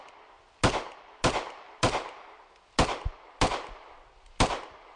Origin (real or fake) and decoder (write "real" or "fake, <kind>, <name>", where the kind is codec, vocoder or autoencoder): real